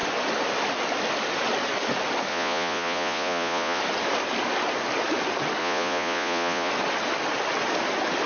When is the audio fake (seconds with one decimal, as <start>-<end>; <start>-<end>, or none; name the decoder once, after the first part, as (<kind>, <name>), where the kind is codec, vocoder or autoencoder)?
2.3-3.8 (vocoder, Vocos); 5.6-6.7